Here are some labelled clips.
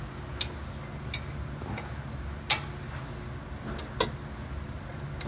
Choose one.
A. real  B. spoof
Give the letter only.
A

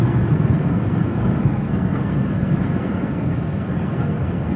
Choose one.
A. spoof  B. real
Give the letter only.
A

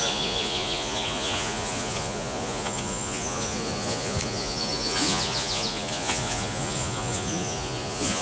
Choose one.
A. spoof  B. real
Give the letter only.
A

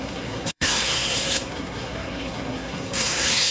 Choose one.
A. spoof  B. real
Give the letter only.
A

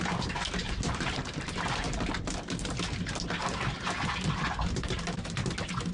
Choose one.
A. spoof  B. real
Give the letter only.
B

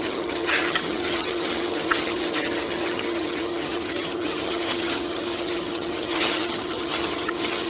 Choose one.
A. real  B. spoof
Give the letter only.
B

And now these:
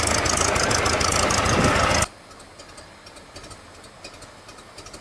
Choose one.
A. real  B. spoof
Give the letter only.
A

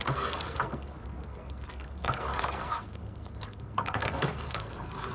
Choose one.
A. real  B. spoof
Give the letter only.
B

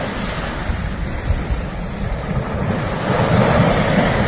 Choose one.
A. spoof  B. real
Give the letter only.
B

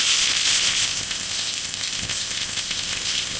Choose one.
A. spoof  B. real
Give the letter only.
A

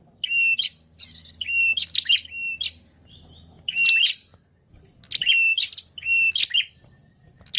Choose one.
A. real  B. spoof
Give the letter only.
A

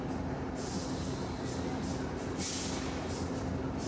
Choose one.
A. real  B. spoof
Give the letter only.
A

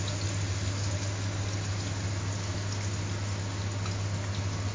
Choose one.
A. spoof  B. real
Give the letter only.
B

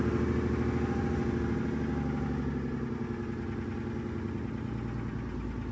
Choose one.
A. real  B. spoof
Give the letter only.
A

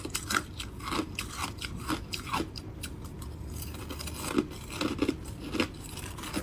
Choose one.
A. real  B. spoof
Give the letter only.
A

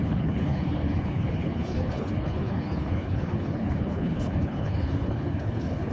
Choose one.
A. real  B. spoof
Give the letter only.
B